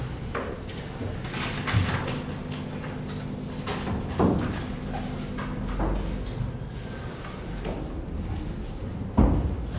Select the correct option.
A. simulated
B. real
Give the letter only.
B